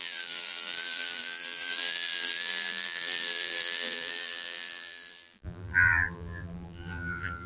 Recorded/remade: remade